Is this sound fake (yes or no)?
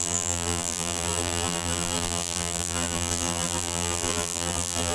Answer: yes